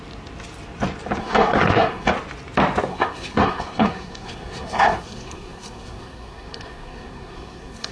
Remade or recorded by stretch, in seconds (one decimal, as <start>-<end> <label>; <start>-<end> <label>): 0.0-1.2 recorded; 1.2-2.1 remade; 2.1-2.9 recorded; 2.9-7.9 remade